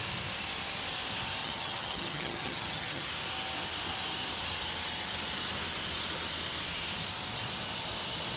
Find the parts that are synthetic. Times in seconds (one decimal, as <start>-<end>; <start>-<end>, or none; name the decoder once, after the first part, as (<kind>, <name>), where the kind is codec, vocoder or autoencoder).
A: 1.4-3.1 (vocoder, HiFi-GAN)